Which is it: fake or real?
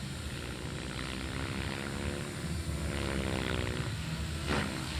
real